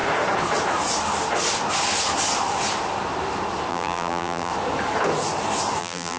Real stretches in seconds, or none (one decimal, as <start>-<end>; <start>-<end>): 0.0-3.7; 4.5-5.8